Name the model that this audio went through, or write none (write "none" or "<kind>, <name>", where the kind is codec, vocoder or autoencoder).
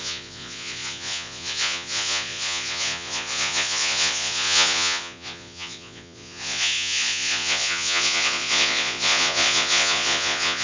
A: vocoder, Vocos